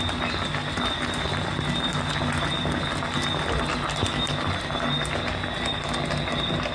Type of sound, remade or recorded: recorded